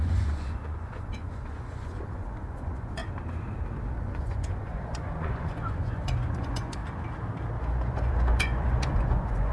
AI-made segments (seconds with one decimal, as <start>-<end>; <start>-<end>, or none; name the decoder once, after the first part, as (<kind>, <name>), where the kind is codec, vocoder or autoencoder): 0.0-3.0 (vocoder, Vocos); 3.9-6.8; 7.6-9.5